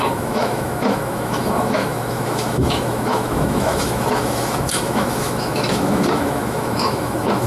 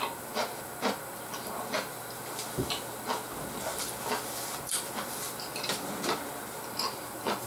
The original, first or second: second